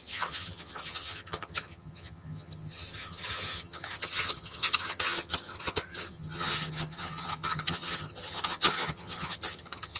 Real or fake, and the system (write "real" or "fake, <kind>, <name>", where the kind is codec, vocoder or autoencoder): fake, vocoder, HiFi-GAN